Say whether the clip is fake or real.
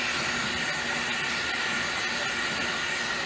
real